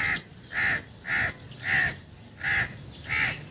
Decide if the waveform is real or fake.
real